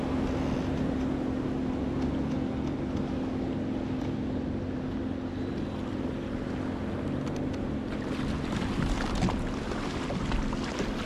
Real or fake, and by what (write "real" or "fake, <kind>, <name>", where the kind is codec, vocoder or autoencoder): real